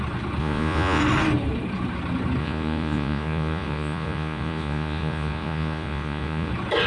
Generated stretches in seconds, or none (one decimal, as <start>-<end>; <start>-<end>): 0.4-1.0; 2.4-6.5